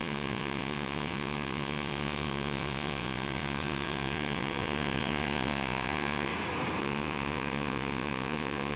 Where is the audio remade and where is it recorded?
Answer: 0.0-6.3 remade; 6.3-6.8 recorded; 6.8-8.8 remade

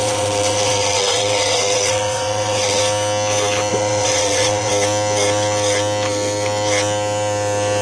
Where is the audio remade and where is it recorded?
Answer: 0.0-2.8 remade; 2.8-3.7 recorded; 3.7-4.7 remade; 4.7-7.8 recorded

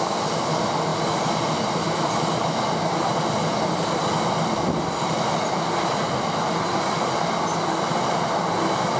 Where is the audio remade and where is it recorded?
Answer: 0.0-9.0 recorded